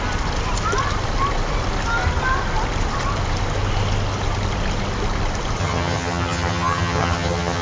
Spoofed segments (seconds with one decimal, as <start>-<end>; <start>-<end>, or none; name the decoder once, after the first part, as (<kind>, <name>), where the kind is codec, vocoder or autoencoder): 5.6-7.6 (vocoder, HiFi-GAN)